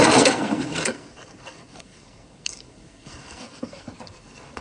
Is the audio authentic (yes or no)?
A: no